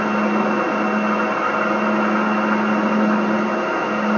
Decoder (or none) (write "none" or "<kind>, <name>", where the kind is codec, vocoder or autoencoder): none